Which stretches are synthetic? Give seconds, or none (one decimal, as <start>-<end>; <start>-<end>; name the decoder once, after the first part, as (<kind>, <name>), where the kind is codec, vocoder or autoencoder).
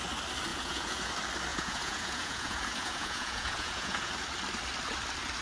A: 0.5-1.1 (vocoder, Vocos); 1.5-4.1